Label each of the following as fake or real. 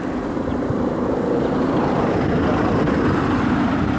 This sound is real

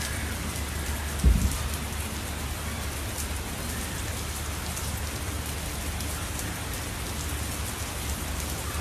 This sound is real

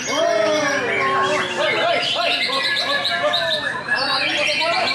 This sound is real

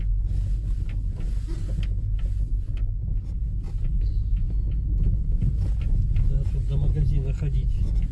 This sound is real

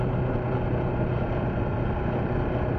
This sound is real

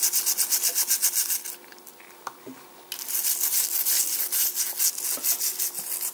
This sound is real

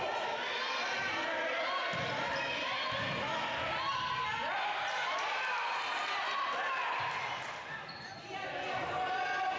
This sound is real